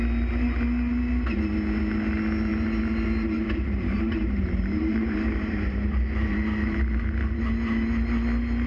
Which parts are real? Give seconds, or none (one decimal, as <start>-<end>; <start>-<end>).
0.0-2.5; 7.4-8.7